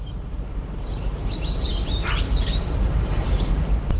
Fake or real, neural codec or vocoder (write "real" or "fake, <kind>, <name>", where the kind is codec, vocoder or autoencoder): fake, vocoder, BigVGAN v2